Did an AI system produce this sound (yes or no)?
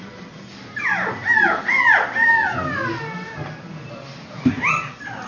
no